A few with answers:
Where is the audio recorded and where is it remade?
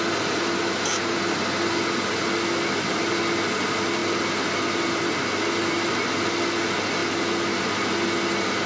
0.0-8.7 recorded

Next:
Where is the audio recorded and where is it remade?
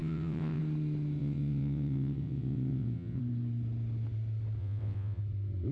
0.0-0.6 remade; 0.6-1.2 recorded; 1.2-3.2 remade; 3.2-4.6 recorded; 4.6-5.2 remade; 5.2-5.7 recorded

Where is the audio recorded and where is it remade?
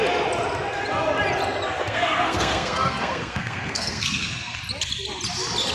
0.0-1.8 recorded; 1.8-4.6 remade; 4.6-5.7 recorded